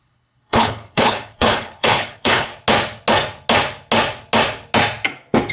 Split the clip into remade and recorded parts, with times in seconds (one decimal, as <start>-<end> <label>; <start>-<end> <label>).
0.0-2.5 remade; 2.5-5.5 recorded